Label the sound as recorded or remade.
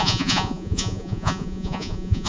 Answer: remade